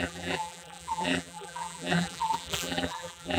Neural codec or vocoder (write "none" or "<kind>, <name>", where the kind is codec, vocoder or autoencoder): vocoder, BigVGAN v2